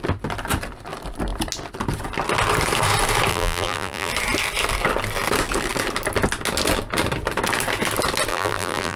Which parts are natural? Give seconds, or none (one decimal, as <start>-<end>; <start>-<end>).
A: 0.0-3.3; 4.1-8.3